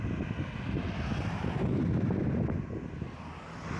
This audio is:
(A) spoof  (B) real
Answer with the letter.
B